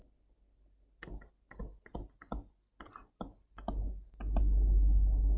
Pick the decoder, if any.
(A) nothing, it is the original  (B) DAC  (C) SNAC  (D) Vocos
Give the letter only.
A